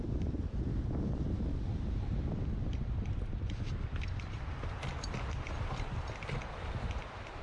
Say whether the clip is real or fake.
fake